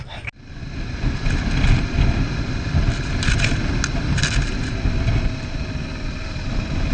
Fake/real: real